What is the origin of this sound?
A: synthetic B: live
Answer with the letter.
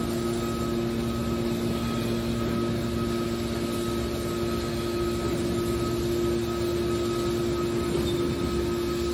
B